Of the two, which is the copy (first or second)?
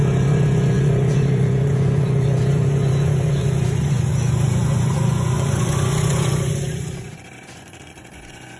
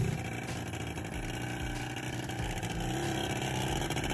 first